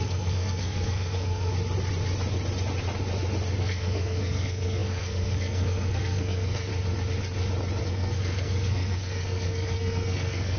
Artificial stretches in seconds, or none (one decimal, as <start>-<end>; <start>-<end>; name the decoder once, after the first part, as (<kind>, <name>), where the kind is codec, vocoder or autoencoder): 0.0-1.5 (codec, SNAC); 3.6-6.7; 7.8-10.6